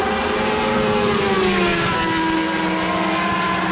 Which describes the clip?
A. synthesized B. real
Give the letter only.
B